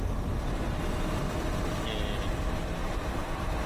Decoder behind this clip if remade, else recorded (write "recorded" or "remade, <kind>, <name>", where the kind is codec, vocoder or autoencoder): recorded